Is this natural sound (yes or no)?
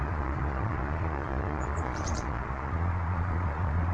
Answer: no